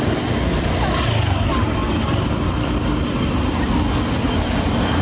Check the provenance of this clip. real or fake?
real